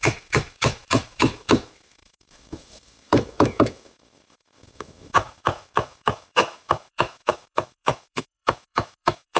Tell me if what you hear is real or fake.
fake